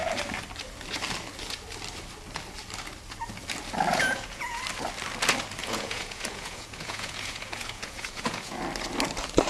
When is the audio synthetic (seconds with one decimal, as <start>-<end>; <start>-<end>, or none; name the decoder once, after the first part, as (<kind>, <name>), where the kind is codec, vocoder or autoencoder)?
3.9-4.6 (vocoder, Vocos); 5.6-8.6